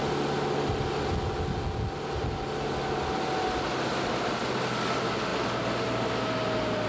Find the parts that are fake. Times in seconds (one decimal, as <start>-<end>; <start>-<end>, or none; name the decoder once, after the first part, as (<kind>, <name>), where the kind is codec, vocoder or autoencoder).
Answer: none